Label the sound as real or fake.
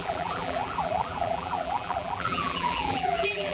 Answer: fake